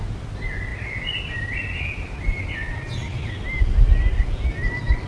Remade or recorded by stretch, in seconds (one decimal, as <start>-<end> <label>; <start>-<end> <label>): 0.0-0.7 recorded; 0.7-2.8 remade; 2.8-5.1 recorded